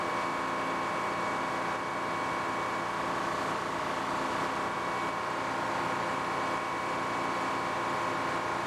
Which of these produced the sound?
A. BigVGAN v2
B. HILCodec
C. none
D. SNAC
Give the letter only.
C